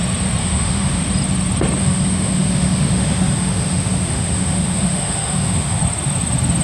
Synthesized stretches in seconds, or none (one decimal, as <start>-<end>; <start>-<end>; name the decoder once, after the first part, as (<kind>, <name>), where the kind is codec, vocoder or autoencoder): 0.4-1.0 (autoencoder, DAC-VAE); 1.8-5.8